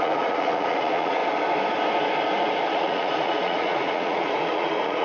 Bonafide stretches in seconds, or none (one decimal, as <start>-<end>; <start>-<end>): 1.2-2.7

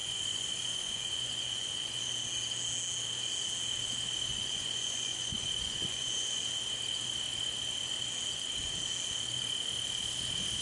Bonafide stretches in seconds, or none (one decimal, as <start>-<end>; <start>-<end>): 2.0-4.3; 6.4-10.6